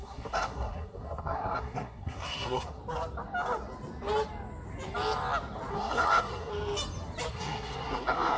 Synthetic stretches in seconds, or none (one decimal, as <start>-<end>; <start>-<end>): 0.0-2.8; 5.7-6.5; 7.3-8.4